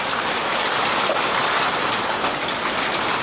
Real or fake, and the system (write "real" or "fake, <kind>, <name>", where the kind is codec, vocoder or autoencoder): real